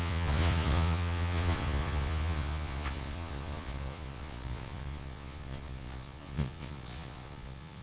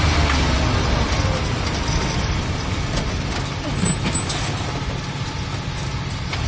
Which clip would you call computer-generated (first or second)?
first